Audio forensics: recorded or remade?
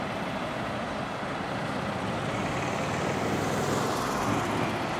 recorded